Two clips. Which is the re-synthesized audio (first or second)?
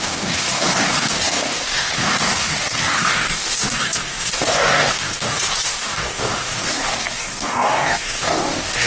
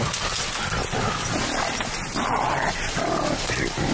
first